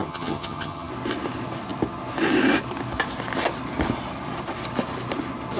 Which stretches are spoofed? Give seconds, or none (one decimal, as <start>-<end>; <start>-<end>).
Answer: 0.0-0.9